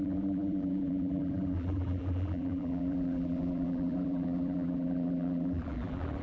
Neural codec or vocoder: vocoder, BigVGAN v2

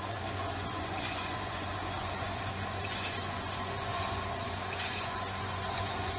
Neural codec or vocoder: vocoder, Vocos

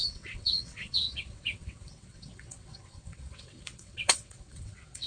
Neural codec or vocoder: vocoder, WaveNeXt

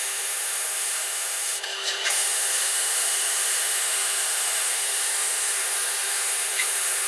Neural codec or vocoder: autoencoder, DAC-VAE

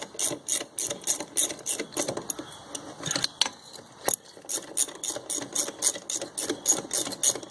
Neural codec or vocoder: none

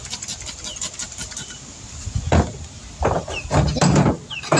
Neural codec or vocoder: none